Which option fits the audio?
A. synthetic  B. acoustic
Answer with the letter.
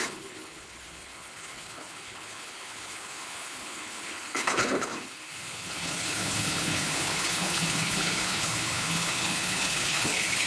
A